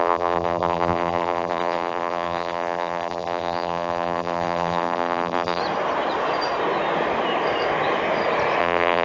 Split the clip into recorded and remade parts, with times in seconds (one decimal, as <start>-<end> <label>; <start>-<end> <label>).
0.0-5.6 remade; 5.6-8.6 recorded; 8.6-9.0 remade